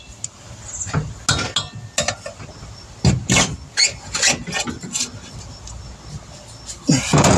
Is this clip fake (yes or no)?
no